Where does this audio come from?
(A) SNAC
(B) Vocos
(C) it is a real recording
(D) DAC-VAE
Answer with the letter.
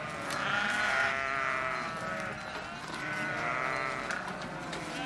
C